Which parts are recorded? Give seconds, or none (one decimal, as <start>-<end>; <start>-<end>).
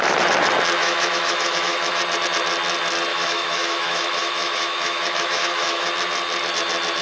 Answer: 0.0-0.8; 2.0-3.1; 5.9-7.0